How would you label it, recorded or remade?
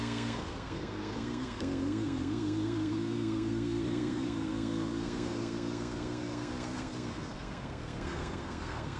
remade